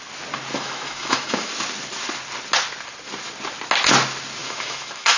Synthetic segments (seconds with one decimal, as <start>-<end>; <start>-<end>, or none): 0.5-1.5; 4.4-5.2